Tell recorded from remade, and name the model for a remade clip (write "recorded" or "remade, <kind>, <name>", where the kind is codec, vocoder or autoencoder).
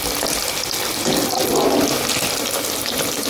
recorded